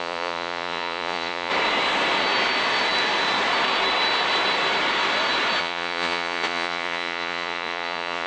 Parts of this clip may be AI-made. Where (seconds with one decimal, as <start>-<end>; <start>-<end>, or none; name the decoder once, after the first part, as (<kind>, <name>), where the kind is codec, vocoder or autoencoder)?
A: 0.0-1.5 (vocoder, Vocos); 5.6-8.3